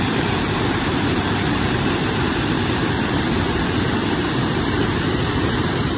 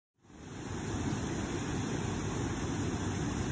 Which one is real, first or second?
second